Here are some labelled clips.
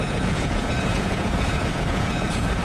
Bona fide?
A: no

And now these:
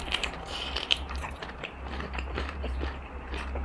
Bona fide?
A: no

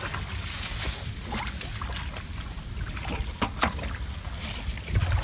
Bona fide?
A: yes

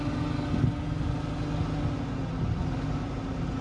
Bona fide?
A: yes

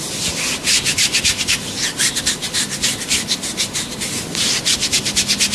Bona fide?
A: yes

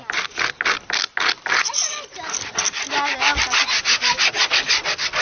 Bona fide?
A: yes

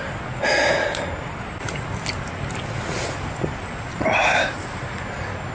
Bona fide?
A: yes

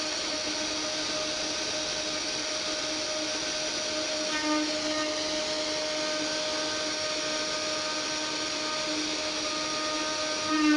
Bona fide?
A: yes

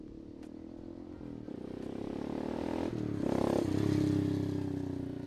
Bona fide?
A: yes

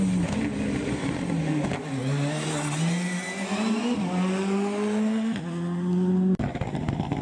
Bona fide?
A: yes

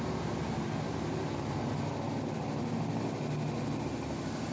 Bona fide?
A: yes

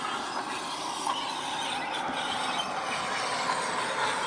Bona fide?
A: yes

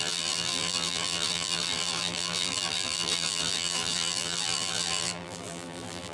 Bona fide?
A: no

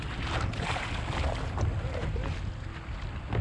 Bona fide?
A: yes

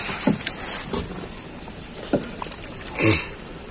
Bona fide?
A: yes